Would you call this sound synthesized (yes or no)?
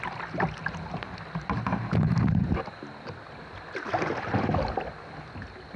no